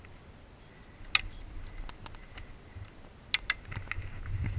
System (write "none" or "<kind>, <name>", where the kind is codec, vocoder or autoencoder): none